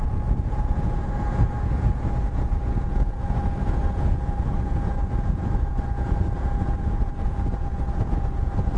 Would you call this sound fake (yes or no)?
yes